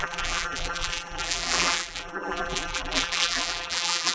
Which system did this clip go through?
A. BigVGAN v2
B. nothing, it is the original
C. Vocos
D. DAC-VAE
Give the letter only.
A